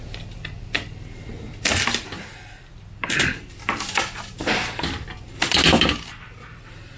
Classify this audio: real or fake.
real